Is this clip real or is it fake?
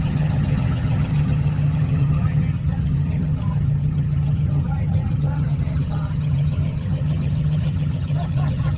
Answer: fake